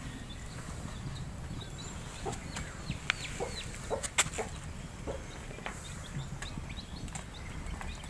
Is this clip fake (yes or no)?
no